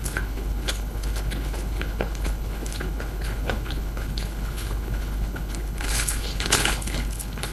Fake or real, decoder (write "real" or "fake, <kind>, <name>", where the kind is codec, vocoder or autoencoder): fake, codec, HILCodec